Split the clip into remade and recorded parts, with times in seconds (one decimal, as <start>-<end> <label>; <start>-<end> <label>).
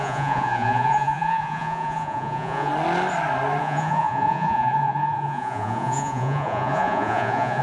0.0-2.7 remade; 2.7-3.6 recorded; 3.6-7.6 remade